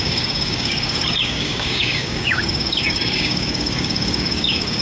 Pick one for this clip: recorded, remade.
remade